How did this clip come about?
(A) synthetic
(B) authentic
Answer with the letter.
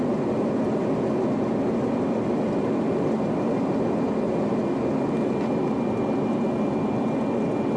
B